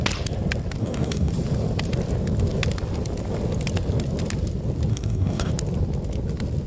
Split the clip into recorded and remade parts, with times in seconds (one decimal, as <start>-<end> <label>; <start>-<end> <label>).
0.0-0.8 recorded; 0.8-1.3 remade; 1.3-4.9 recorded; 4.9-5.5 remade; 5.5-6.7 recorded